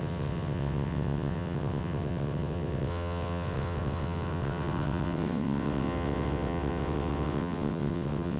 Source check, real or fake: fake